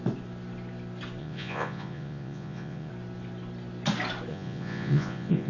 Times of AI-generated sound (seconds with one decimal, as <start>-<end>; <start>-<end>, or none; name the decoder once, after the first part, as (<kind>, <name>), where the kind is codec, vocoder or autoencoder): 1.2-2.9 (vocoder, Vocos); 4.3-5.5